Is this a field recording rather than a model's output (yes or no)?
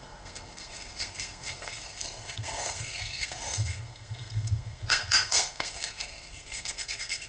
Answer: no